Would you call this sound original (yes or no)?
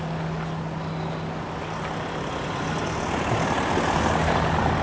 yes